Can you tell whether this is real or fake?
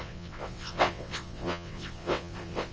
fake